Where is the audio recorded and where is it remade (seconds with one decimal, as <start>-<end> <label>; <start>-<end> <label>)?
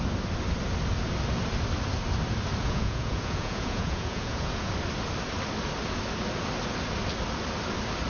0.0-2.6 recorded; 2.6-4.7 remade; 4.7-8.1 recorded